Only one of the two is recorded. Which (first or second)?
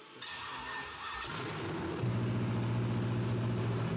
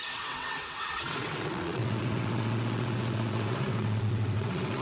first